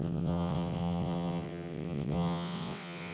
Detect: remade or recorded remade